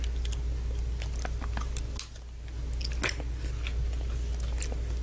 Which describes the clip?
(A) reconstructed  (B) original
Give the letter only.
B